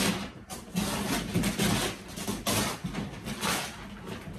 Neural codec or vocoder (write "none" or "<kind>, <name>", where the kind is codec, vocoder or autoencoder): none